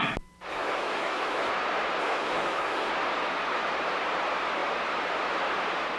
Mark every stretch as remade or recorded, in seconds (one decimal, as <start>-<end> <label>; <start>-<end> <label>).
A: 0.0-0.5 recorded; 0.5-1.5 remade; 1.5-2.0 recorded; 2.0-2.9 remade; 2.9-6.0 recorded